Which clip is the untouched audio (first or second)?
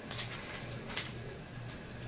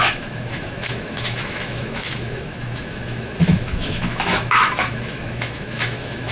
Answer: first